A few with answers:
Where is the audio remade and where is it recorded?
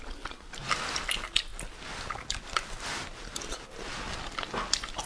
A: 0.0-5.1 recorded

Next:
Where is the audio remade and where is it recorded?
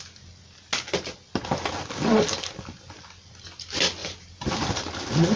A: 0.0-4.0 recorded; 4.0-5.0 remade; 5.0-5.4 recorded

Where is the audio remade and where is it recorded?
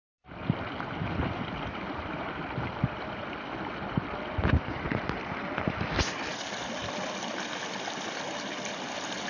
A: 0.0-0.7 recorded; 0.7-6.3 remade; 6.3-6.8 recorded; 6.8-9.3 remade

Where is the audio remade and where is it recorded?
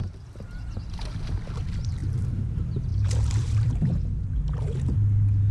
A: 0.0-2.0 recorded; 2.0-2.5 remade; 2.5-2.9 recorded; 2.9-4.4 remade; 4.4-5.5 recorded